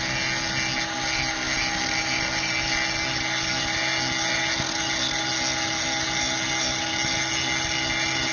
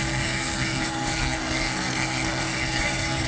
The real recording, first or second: first